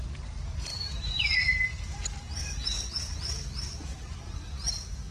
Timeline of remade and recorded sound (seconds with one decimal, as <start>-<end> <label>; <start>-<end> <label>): 0.0-0.7 recorded; 0.7-2.0 remade; 2.0-5.1 recorded